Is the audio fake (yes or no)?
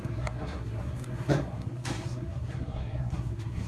yes